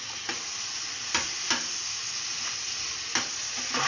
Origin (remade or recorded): recorded